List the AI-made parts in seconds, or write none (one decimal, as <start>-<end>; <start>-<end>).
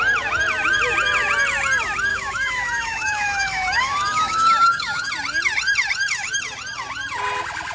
2.1-5.1